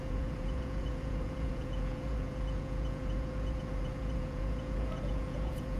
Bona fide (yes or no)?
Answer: no